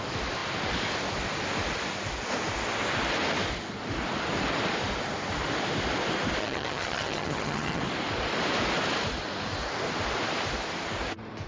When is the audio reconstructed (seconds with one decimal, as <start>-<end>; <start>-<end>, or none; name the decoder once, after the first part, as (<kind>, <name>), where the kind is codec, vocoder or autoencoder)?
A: 6.4-7.8 (vocoder, HiFi-GAN)